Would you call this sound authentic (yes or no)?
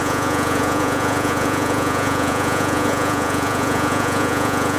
no